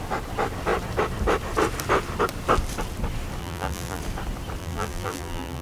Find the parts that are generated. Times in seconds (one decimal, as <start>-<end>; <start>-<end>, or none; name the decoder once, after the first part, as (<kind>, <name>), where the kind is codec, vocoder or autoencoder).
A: 3.4-4.0 (vocoder, BigVGAN v2); 4.6-5.6